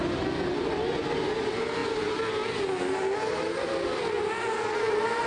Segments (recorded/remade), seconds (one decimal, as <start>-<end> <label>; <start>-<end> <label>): 0.0-5.3 recorded